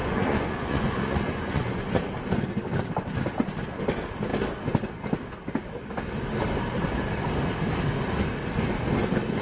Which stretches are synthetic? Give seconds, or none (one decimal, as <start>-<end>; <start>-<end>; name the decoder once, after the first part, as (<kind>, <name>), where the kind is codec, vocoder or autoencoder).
0.0-2.0 (vocoder, Vocos)